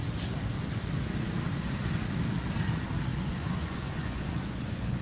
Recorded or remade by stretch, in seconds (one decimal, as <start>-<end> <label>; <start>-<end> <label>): 0.0-3.1 recorded; 3.1-5.0 remade